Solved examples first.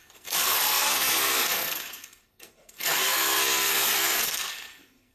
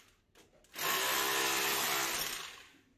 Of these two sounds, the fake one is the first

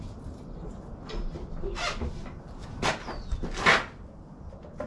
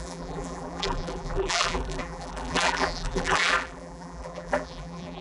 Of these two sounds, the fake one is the second